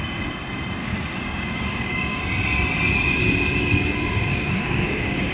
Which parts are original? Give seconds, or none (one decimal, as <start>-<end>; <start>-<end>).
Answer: 0.0-0.8; 2.2-4.3